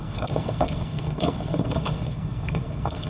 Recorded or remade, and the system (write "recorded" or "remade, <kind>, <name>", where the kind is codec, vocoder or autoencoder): remade, codec, SNAC